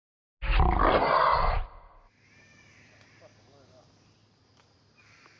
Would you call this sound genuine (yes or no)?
yes